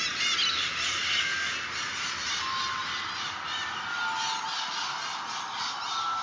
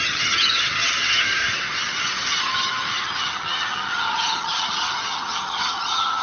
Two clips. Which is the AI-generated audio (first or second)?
second